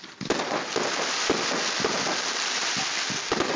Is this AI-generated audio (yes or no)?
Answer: no